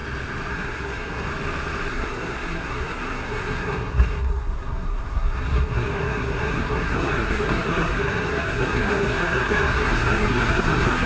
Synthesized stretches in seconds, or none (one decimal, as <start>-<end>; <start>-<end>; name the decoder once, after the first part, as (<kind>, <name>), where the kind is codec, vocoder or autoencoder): 0.5-1.3 (codec, SNAC); 1.9-11.1